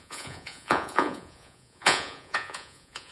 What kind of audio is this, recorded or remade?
remade